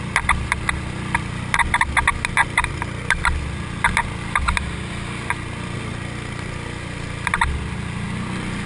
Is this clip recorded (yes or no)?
yes